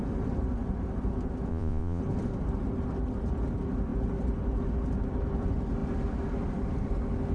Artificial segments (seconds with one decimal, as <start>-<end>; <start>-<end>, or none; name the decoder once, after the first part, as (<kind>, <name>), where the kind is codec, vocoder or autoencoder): 1.5-2.0 (vocoder, Vocos)